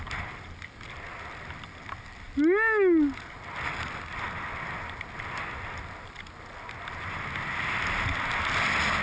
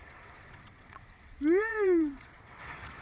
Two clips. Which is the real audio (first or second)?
first